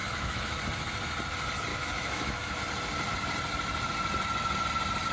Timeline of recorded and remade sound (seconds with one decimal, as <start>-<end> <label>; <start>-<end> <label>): 0.0-0.6 remade; 0.6-1.7 recorded; 1.7-2.6 remade; 2.6-5.1 recorded